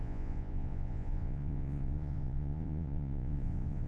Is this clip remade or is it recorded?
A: remade